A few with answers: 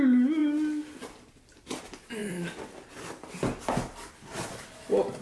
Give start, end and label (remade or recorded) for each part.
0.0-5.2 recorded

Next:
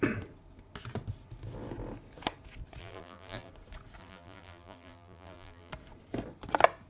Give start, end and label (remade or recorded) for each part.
0.0-2.8 recorded; 2.8-3.5 remade; 3.5-4.0 recorded; 4.0-5.7 remade; 5.7-6.9 recorded

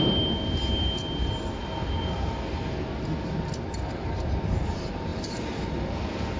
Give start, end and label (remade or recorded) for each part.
0.0-5.1 recorded; 5.1-5.9 remade; 5.9-6.4 recorded

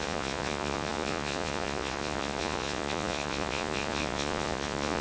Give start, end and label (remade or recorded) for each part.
0.0-5.0 remade

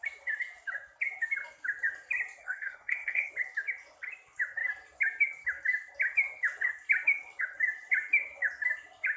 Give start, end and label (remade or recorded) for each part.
0.0-2.4 recorded; 2.4-3.3 remade; 3.3-9.2 recorded

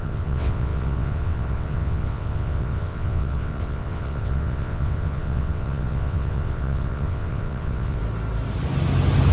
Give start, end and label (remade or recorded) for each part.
0.0-8.0 remade; 8.0-9.3 recorded